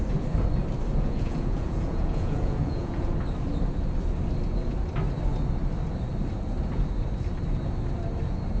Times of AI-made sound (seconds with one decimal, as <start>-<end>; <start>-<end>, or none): 0.9-3.2